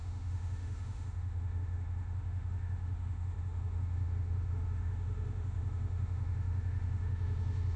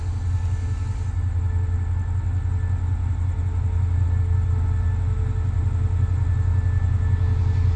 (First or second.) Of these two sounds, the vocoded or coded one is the first